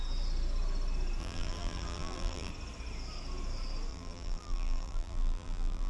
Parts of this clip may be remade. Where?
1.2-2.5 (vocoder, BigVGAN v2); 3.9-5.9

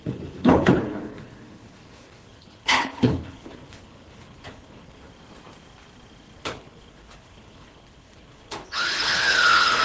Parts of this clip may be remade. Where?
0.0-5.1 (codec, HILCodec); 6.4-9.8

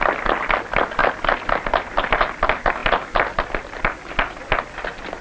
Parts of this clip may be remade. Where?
none

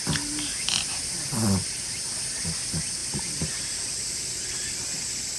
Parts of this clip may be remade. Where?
1.6-2.1 (vocoder, BigVGAN v2)

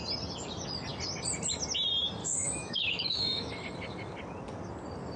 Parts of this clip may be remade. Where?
2.2-3.5 (autoencoder, DAC-VAE)

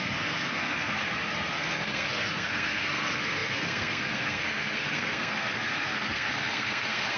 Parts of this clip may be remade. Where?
0.0-1.0 (codec, SNAC); 1.5-7.2